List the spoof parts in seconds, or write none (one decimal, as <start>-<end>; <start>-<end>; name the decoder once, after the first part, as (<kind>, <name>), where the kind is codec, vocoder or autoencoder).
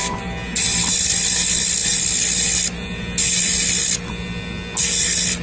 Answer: none